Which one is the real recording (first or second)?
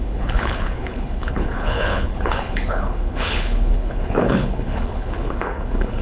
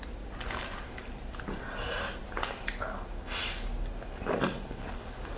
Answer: second